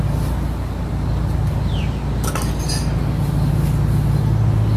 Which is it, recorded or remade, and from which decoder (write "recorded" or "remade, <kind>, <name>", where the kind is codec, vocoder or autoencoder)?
recorded